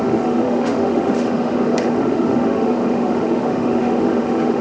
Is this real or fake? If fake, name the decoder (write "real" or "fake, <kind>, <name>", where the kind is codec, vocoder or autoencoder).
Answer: fake, autoencoder, DAC-VAE